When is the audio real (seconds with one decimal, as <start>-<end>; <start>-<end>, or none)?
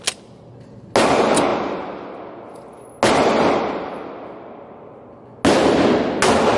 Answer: 0.0-6.6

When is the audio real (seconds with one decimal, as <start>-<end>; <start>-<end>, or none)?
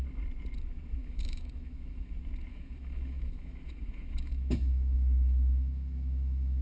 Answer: 0.0-1.0; 2.1-2.5